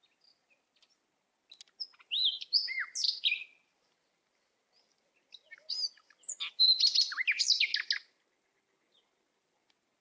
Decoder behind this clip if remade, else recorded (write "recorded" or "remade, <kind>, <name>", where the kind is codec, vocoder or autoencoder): recorded